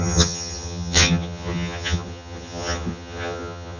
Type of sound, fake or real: fake